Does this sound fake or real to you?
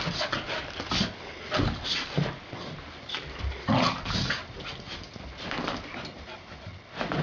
real